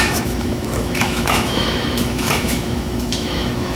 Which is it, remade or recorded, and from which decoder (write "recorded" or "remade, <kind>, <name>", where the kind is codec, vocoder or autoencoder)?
remade, autoencoder, DAC-VAE